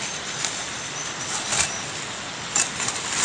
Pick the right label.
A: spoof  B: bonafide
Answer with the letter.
B